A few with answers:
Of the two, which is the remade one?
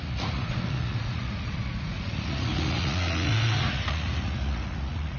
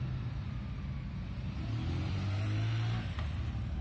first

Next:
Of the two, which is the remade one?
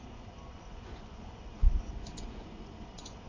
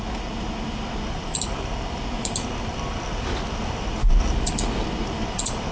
first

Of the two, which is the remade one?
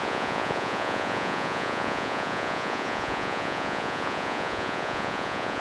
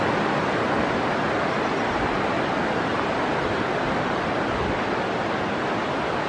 first